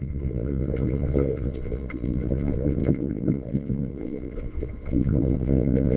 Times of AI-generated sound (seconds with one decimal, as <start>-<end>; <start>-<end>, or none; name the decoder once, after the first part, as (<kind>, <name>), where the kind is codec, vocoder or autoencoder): 0.0-6.0 (vocoder, WaveNeXt)

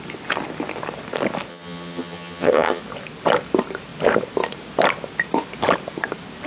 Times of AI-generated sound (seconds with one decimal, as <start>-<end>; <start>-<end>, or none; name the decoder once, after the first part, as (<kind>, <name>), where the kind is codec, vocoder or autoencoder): 1.5-2.8 (vocoder, HiFi-GAN)

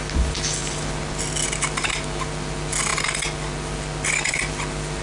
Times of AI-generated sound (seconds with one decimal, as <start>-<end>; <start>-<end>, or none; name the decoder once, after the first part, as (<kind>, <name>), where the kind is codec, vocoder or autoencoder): none

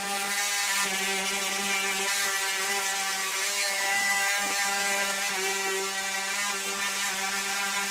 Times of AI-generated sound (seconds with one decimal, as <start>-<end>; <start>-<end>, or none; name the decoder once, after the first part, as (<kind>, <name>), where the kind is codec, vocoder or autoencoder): 3.2-5.3 (autoencoder, DAC-VAE)

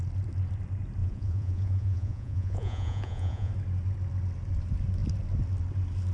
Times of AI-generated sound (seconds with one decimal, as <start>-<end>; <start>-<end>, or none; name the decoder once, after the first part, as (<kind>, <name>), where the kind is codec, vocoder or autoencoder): 1.0-3.5 (vocoder, Vocos)

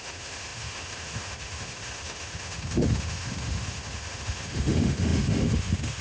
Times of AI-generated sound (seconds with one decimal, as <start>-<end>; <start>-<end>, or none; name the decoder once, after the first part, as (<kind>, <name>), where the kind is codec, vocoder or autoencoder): 0.0-6.0 (autoencoder, DAC-VAE)